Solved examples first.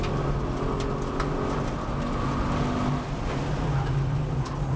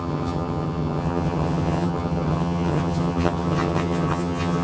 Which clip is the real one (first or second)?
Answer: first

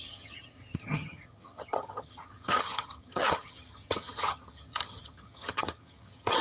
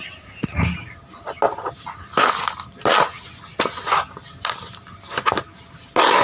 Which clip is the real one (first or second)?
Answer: second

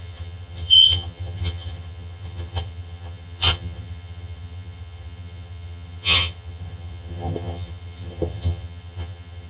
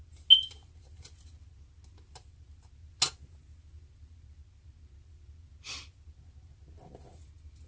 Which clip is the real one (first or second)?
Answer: second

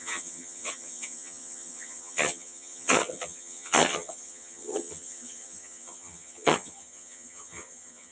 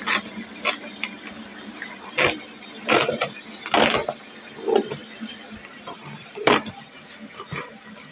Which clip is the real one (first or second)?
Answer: second